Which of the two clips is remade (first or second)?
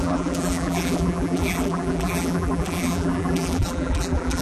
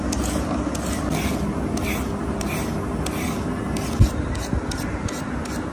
first